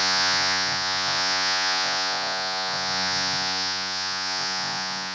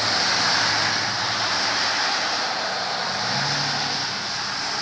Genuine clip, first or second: second